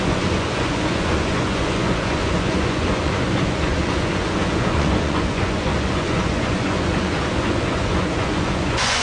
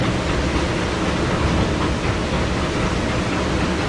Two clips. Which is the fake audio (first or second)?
first